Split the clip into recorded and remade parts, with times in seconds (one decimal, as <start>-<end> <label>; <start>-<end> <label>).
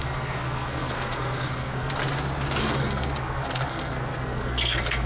0.0-2.0 remade; 2.0-2.6 recorded; 2.6-5.1 remade